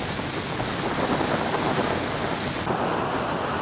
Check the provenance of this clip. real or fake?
real